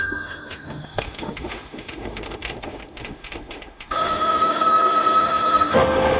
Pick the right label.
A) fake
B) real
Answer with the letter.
A